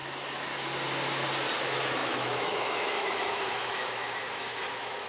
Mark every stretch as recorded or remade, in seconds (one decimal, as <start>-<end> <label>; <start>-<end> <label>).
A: 0.0-1.6 recorded; 1.6-5.1 remade